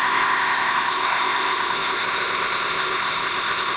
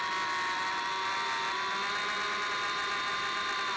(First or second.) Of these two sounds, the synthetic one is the first